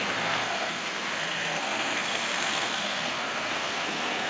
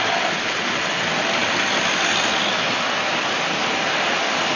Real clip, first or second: second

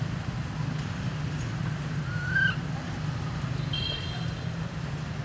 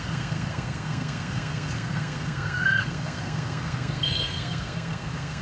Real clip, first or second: first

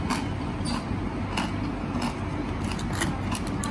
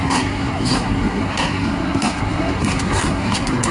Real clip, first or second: first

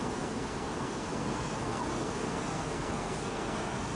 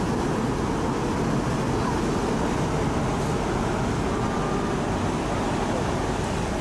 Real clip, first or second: second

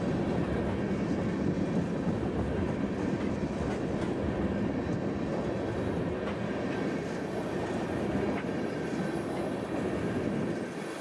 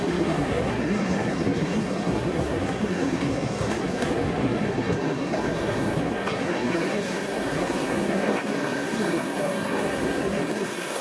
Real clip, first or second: first